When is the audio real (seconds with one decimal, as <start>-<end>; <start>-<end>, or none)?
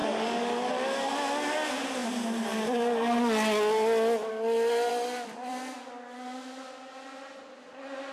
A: 0.7-8.1